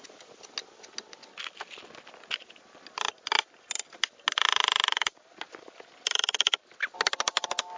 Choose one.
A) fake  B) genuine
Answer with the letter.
B